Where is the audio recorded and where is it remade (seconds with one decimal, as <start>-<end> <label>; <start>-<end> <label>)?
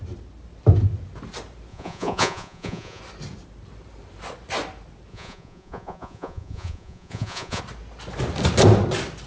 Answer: 0.0-1.7 recorded; 1.7-3.0 remade; 3.0-5.1 recorded; 5.1-7.6 remade; 7.6-9.3 recorded